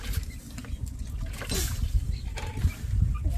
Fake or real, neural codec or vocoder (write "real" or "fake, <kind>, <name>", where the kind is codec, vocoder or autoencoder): real